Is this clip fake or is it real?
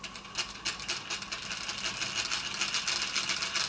real